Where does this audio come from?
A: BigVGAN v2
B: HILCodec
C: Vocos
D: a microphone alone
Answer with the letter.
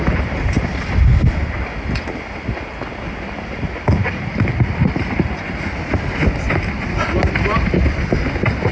D